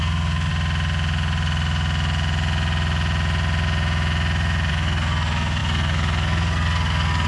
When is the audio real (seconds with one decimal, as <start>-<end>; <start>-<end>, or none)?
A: 0.5-4.7